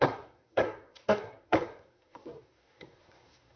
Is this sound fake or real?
fake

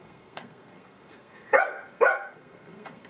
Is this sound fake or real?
fake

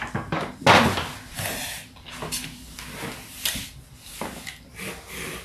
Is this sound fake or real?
real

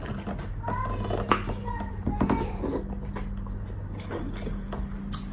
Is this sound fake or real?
real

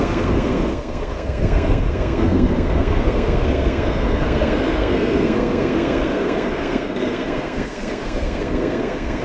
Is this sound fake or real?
fake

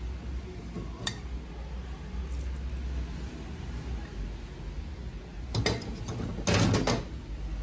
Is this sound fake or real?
real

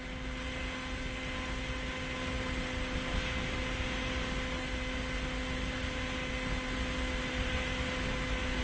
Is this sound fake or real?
real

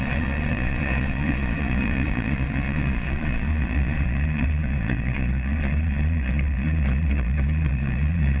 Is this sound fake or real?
fake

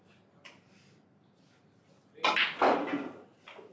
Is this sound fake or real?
real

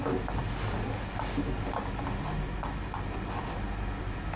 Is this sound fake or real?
real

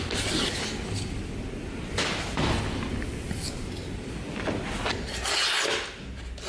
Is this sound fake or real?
real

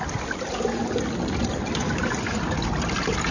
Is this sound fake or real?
real